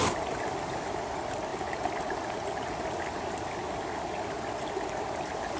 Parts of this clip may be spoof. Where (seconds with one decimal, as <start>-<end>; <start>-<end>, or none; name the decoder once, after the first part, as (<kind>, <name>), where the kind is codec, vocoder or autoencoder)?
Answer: none